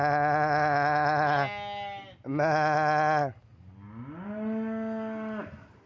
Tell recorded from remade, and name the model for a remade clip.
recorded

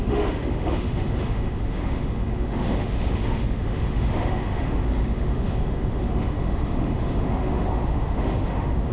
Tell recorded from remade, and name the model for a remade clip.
remade, autoencoder, DAC-VAE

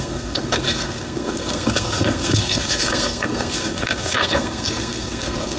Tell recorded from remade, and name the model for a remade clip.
remade, codec, SNAC